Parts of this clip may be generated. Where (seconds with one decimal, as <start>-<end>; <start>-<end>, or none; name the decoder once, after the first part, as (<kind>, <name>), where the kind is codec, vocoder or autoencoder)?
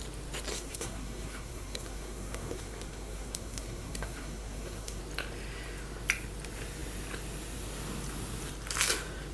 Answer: 0.5-5.0 (codec, SNAC)